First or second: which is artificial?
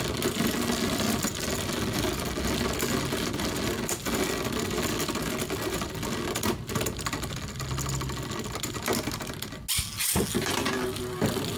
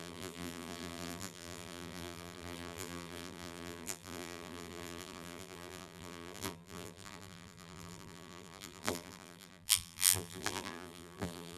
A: second